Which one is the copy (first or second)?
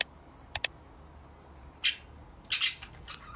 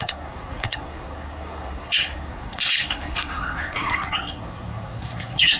second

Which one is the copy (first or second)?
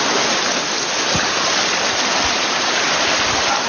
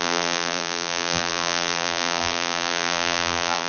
second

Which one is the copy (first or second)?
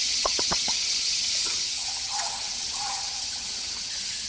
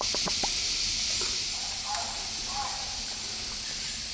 first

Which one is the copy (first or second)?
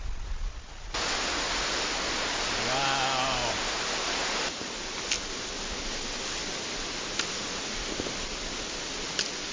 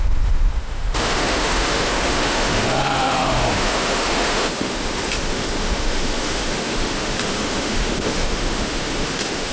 second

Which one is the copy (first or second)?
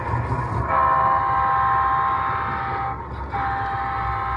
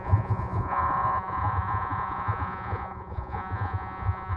second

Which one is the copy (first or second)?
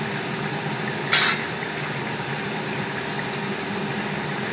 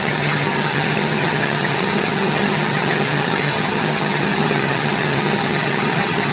second